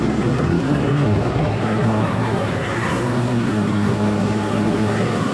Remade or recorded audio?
remade